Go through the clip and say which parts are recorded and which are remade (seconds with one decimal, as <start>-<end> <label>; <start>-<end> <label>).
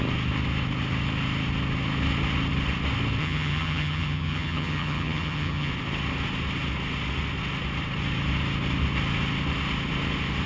0.0-3.2 recorded; 3.2-5.7 remade; 5.7-10.5 recorded